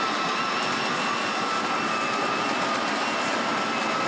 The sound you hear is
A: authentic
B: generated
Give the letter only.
A